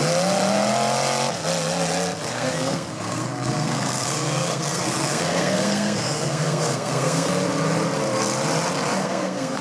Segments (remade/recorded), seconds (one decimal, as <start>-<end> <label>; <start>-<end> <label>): 0.0-2.3 recorded; 2.3-7.3 remade; 7.3-9.0 recorded; 9.0-9.6 remade

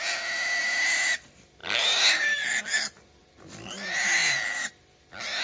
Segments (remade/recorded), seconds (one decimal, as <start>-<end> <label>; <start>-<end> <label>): 0.0-4.2 recorded; 4.2-4.7 remade; 4.7-5.4 recorded

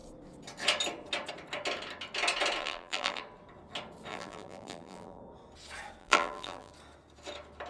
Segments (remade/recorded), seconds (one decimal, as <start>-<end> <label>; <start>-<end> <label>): 0.0-2.6 recorded; 2.6-3.2 remade; 3.2-4.1 recorded; 4.1-5.2 remade; 5.2-6.0 recorded; 6.0-6.7 remade; 6.7-7.7 recorded

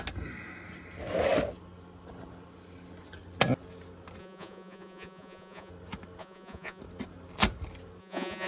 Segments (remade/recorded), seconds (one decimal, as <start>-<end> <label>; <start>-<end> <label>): 0.0-4.2 recorded; 4.2-5.7 remade; 5.7-6.2 recorded; 6.2-6.8 remade; 6.8-8.0 recorded; 8.0-8.5 remade

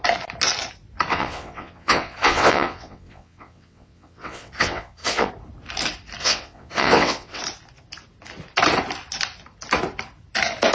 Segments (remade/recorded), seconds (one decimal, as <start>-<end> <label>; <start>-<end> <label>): 0.0-1.1 recorded; 1.1-5.3 remade; 5.3-6.2 recorded; 6.2-7.4 remade; 7.4-10.7 recorded

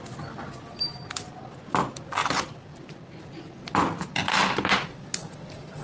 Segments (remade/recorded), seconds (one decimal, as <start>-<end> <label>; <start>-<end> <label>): 0.0-5.8 recorded